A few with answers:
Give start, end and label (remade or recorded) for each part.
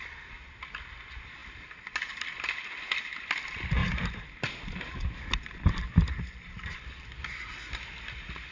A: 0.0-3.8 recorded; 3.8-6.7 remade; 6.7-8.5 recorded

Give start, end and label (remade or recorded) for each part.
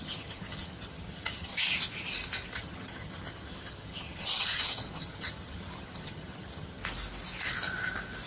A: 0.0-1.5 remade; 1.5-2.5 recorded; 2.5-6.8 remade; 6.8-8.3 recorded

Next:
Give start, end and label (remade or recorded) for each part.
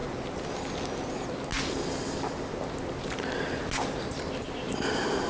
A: 0.0-5.3 recorded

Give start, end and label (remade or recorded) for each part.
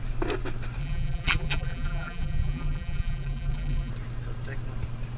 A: 0.0-0.8 recorded; 0.8-3.9 remade; 3.9-5.2 recorded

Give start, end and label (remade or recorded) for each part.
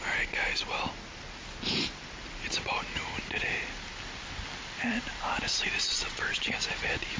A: 0.0-5.8 recorded; 5.8-6.4 remade; 6.4-7.2 recorded